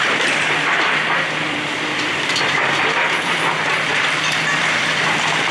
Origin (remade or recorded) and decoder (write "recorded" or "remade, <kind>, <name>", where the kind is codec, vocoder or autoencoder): remade, vocoder, BigVGAN v2